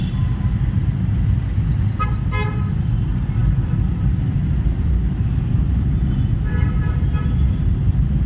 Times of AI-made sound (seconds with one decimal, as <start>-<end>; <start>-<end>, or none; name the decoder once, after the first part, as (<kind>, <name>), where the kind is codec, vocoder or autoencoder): 3.4-4.9 (vocoder, BigVGAN v2)